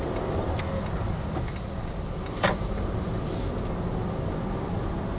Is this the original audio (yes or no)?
yes